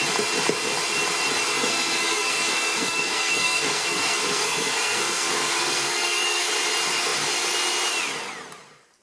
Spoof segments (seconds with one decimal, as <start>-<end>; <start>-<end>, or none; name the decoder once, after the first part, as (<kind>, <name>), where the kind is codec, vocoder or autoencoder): 1.5-6.5 (codec, SNAC)

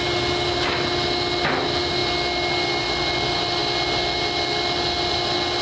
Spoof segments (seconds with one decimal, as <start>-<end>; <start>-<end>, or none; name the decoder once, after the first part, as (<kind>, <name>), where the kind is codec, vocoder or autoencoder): none

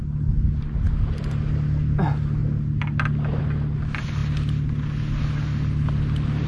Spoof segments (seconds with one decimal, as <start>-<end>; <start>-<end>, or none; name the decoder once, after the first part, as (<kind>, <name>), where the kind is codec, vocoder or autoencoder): none